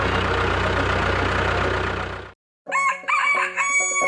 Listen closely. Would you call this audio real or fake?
real